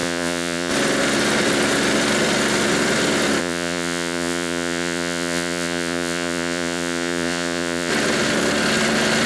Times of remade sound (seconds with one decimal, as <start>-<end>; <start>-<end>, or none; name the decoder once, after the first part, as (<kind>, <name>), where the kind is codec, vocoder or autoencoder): 0.0-0.7 (vocoder, Vocos); 3.4-7.9

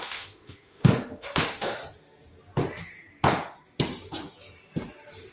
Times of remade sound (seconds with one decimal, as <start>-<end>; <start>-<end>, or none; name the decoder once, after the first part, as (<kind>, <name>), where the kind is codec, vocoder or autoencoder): 0.0-1.8 (autoencoder, DAC-VAE)

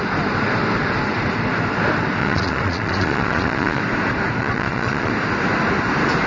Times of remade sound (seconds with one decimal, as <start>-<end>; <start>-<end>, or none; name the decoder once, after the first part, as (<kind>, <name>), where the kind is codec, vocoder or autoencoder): 2.2-3.8 (vocoder, Vocos); 4.4-5.1